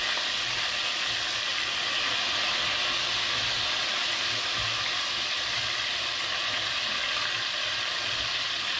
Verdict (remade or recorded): recorded